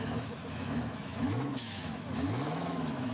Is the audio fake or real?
fake